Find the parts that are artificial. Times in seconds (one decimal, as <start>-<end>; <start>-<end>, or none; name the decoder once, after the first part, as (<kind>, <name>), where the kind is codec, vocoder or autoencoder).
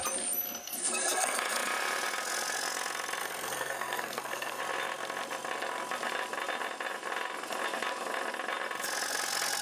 0.6-1.4 (codec, SNAC); 3.2-4.6